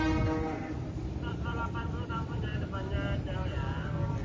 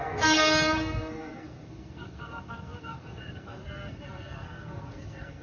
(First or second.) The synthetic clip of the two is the second